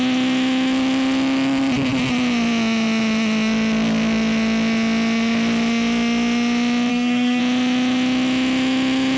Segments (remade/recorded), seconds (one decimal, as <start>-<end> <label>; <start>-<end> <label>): 0.0-6.9 recorded; 6.9-7.4 remade; 7.4-9.2 recorded